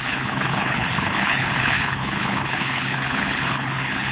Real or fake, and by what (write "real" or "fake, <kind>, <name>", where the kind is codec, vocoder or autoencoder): fake, codec, HILCodec